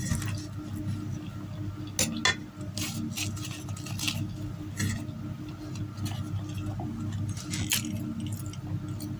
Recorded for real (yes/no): yes